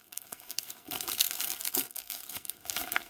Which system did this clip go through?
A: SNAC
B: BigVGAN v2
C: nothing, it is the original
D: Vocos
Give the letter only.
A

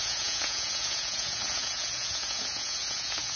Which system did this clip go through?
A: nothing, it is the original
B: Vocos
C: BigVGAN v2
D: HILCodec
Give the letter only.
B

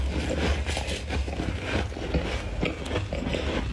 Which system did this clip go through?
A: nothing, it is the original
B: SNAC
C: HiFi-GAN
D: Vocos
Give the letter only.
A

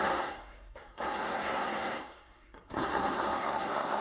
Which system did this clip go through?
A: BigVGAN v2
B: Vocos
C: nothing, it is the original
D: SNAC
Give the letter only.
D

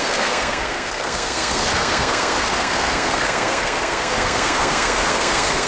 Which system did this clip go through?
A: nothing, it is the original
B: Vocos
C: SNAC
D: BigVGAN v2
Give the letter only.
C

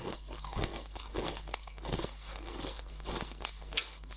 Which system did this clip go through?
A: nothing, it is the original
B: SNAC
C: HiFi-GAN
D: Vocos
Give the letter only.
B